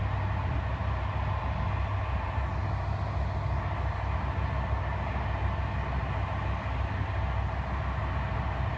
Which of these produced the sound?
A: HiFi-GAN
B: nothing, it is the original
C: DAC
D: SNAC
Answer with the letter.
B